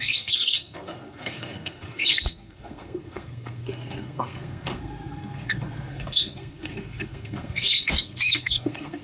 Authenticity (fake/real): fake